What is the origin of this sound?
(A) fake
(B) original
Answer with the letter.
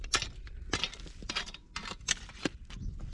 B